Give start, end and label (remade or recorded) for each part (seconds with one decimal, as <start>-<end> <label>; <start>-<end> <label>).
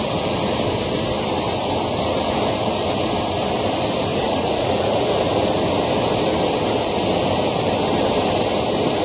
0.0-4.1 recorded; 4.1-5.2 remade; 5.2-9.0 recorded